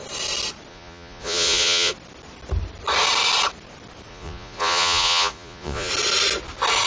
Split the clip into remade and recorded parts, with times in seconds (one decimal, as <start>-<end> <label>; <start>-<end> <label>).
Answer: 0.0-0.7 recorded; 0.7-1.9 remade; 1.9-4.1 recorded; 4.1-5.9 remade; 5.9-6.9 recorded